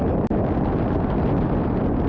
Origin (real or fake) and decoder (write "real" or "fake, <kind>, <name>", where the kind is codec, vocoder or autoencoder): real